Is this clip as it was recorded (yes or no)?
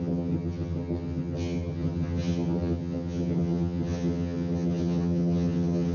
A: no